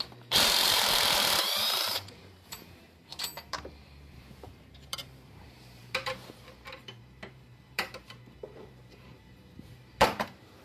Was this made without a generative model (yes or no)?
no